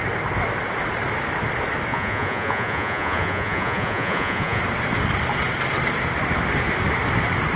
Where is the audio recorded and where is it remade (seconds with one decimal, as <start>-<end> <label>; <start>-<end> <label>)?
0.0-1.9 recorded; 1.9-4.6 remade; 4.6-7.6 recorded